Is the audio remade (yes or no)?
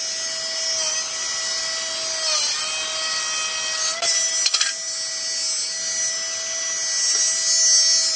no